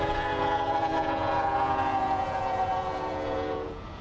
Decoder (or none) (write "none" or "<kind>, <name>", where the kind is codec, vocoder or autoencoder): vocoder, Vocos